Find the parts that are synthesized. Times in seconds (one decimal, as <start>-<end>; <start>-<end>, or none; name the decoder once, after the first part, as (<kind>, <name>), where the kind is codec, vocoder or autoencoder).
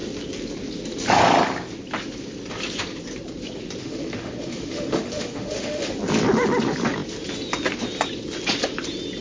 3.8-5.9 (autoencoder, DAC-VAE)